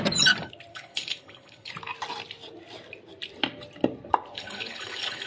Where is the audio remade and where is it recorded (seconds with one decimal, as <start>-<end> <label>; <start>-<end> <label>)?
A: 0.0-0.7 recorded; 0.7-1.7 remade; 1.7-4.3 recorded; 4.3-5.3 remade